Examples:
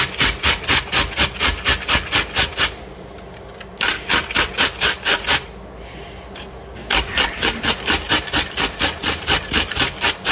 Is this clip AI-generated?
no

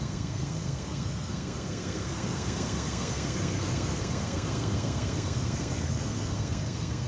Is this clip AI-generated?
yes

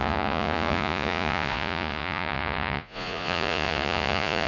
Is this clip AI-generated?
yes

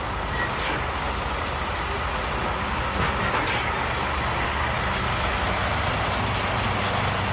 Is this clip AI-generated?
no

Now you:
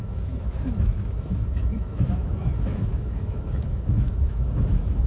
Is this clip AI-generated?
yes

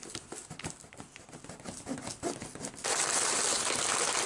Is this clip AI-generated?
no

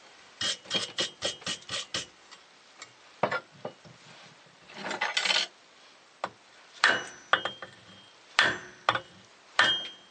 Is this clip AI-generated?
no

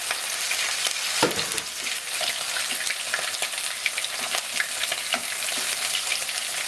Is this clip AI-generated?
no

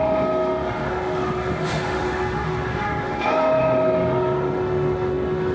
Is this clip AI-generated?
yes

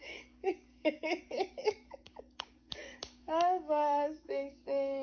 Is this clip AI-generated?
yes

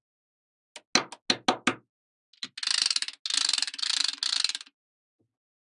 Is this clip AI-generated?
no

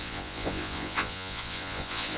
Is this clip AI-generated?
yes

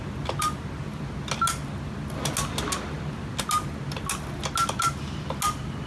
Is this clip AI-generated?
no